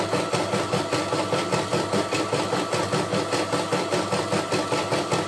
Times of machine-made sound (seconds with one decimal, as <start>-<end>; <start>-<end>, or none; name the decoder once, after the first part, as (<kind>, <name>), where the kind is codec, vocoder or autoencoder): none